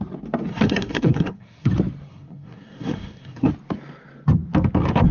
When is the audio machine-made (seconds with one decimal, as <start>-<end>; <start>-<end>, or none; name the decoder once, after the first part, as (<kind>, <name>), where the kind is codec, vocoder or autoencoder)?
0.5-1.7 (codec, SNAC); 2.1-3.5